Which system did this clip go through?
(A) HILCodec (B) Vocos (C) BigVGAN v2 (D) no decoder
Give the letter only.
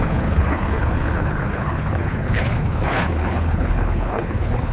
A